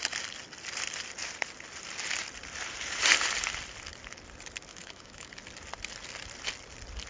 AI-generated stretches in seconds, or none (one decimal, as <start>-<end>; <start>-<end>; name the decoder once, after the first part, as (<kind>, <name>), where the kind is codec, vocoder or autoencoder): 4.7-5.3 (autoencoder, DAC-VAE)